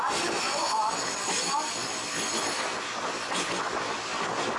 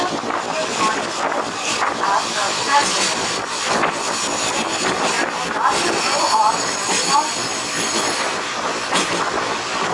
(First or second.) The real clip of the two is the first